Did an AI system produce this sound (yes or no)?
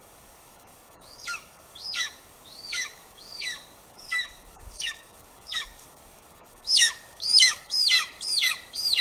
yes